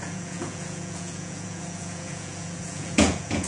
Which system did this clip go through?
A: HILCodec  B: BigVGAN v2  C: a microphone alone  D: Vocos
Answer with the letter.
D